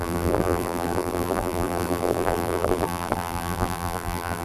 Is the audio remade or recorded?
remade